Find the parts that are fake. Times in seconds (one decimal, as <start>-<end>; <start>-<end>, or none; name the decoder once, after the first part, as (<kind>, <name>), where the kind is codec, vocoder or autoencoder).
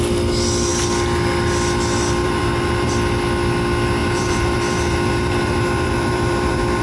2.2-2.9 (vocoder, BigVGAN v2); 4.0-6.8